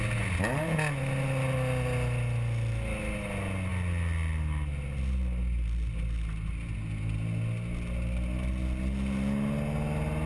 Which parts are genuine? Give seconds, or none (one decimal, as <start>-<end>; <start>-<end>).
0.0-10.3